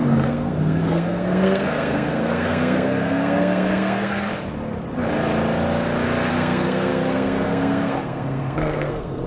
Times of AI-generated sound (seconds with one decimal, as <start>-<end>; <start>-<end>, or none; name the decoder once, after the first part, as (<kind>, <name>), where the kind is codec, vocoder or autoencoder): 0.0-4.3 (codec, SNAC); 6.3-9.3